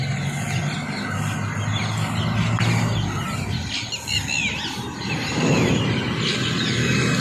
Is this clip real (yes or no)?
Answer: yes